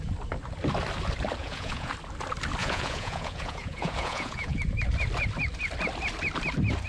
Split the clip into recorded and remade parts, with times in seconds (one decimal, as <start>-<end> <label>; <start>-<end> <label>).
0.0-1.4 recorded; 1.4-1.9 remade; 1.9-2.6 recorded; 2.6-4.6 remade; 4.6-6.9 recorded